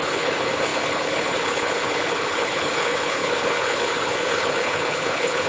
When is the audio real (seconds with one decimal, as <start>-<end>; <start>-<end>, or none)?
none

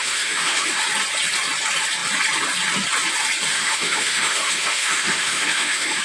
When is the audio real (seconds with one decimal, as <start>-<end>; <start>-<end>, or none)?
0.8-3.5

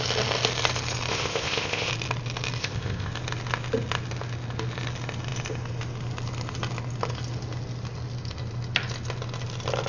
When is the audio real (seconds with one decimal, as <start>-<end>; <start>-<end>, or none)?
0.0-1.1; 1.9-2.6; 3.1-9.9